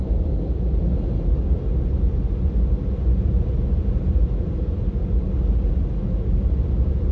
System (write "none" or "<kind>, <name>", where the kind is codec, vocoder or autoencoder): none